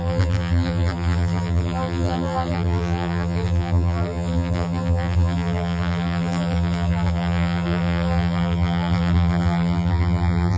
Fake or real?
fake